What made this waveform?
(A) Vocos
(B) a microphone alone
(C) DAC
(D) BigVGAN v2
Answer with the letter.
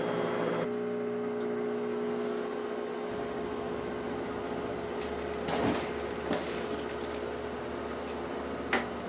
B